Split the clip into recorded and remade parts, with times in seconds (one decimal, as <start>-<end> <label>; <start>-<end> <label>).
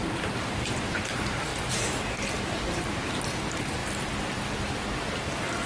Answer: 0.0-1.5 remade; 1.5-2.3 recorded; 2.3-3.8 remade; 3.8-4.5 recorded; 4.5-5.7 remade